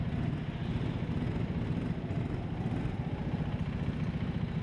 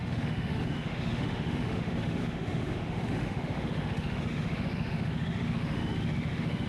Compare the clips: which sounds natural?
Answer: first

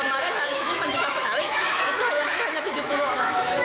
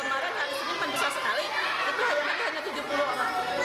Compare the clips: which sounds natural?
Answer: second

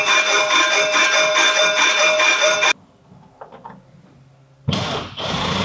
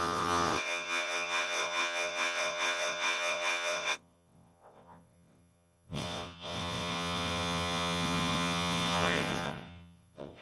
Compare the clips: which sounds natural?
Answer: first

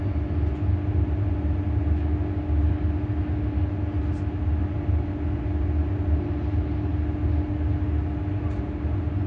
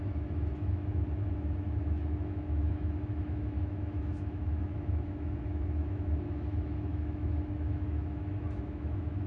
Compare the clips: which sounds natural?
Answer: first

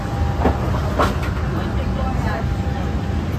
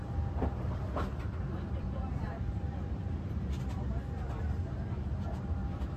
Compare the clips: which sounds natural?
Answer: first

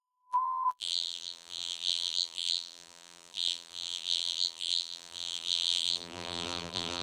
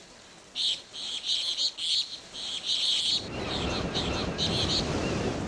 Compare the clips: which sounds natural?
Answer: second